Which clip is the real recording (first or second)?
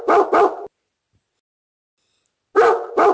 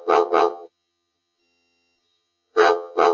first